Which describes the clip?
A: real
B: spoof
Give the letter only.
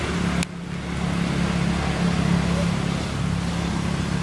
A